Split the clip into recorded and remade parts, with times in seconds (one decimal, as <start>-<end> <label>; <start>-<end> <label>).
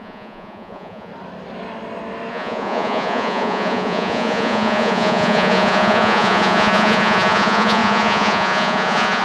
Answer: 0.0-1.1 remade; 1.1-2.3 recorded; 2.3-9.2 remade